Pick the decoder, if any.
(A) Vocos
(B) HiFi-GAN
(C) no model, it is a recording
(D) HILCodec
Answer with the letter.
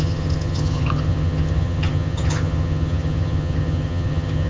B